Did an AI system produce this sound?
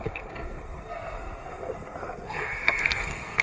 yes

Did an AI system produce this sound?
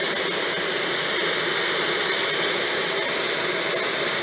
no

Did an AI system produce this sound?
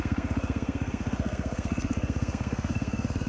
yes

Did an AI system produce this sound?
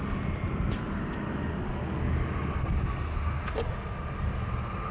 no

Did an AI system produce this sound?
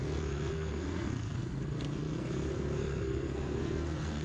yes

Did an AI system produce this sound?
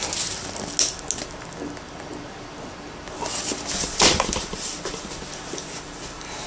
no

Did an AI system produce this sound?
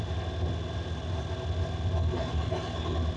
no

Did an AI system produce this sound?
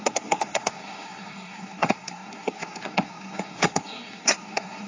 yes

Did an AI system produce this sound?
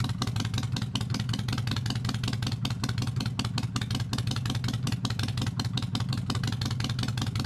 no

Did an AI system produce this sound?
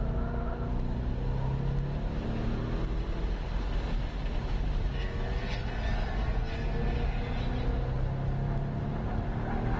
no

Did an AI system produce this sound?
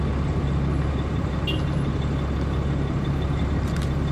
no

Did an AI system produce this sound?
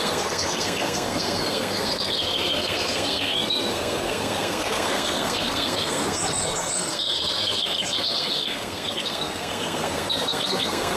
yes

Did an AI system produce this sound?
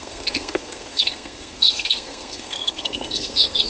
yes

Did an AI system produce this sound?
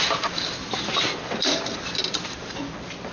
no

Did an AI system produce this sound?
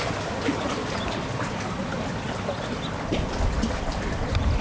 no